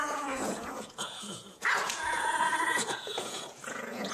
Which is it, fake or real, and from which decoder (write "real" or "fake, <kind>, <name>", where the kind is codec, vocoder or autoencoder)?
fake, vocoder, Vocos